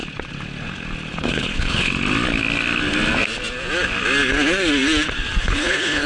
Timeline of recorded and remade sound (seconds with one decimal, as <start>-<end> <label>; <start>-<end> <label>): 0.0-1.1 recorded; 1.1-1.9 remade; 1.9-5.4 recorded; 5.4-6.1 remade